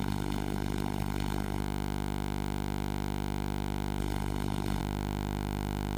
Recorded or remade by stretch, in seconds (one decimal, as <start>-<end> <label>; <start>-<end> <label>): 0.0-1.6 remade; 1.6-4.0 recorded; 4.0-4.8 remade; 4.8-6.0 recorded